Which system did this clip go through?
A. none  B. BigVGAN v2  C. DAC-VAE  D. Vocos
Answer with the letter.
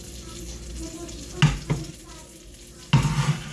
A